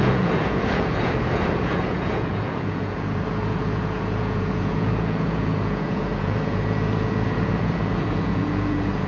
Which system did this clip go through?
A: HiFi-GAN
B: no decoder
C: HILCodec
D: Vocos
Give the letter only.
D